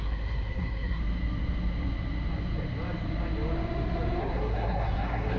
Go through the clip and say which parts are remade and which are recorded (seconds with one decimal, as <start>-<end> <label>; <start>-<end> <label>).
0.0-1.0 remade; 1.0-4.2 recorded; 4.2-5.4 remade